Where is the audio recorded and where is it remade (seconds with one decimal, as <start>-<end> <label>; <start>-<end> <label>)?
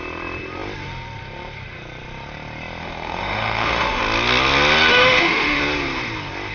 0.0-2.8 recorded; 2.8-4.0 remade; 4.0-4.9 recorded; 4.9-5.6 remade; 5.6-6.5 recorded